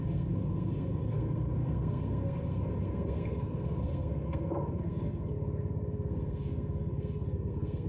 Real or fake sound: fake